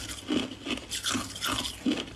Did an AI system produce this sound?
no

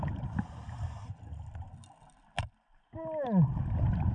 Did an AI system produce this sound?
no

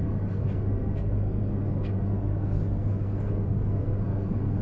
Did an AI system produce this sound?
yes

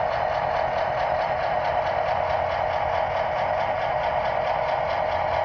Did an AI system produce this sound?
no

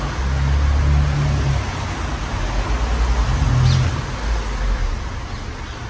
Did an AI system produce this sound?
no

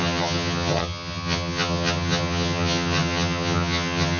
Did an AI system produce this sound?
yes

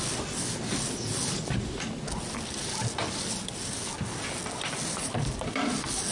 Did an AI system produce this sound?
no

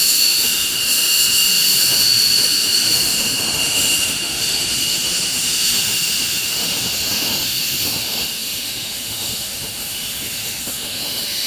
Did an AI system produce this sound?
yes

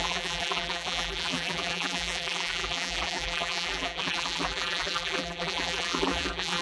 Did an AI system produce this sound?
yes